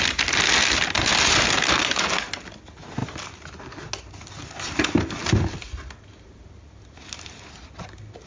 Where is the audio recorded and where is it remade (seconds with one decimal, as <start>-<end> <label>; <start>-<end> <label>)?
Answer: 0.0-8.3 recorded